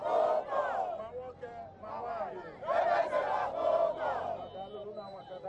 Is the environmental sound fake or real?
real